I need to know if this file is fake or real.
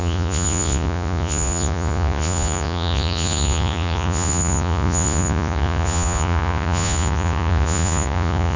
fake